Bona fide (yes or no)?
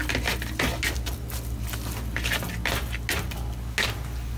yes